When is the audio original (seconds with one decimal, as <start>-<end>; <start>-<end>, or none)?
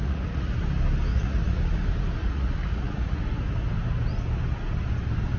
0.6-1.1; 1.6-2.2; 3.2-5.4